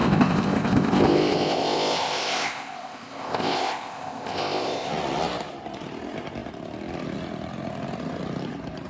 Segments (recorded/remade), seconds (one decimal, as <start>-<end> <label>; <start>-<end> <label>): 0.0-4.9 remade; 4.9-8.9 recorded